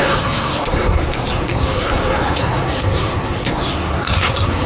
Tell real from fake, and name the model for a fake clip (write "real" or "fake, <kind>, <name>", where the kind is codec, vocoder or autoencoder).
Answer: fake, codec, SNAC